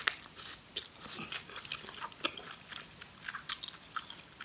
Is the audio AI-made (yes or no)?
no